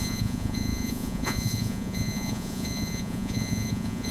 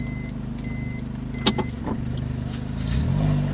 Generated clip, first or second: first